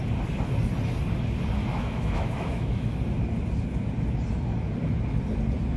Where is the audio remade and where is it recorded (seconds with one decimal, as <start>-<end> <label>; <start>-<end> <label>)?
0.0-1.6 recorded; 1.6-3.0 remade; 3.0-5.8 recorded